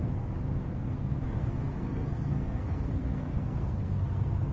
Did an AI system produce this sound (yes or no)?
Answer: yes